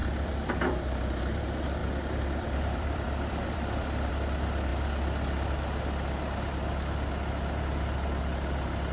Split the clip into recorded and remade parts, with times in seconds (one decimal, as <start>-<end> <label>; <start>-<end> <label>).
0.0-1.4 remade; 1.4-1.8 recorded; 1.8-4.1 remade; 4.1-8.9 recorded